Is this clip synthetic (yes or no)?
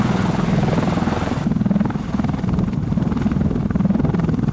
no